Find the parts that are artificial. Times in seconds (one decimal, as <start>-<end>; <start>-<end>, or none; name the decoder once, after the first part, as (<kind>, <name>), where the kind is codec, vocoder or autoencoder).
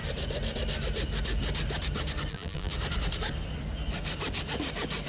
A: 2.3-2.7 (vocoder, BigVGAN v2)